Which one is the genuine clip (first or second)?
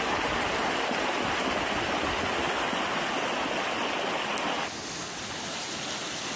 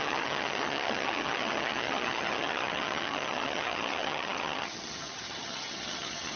first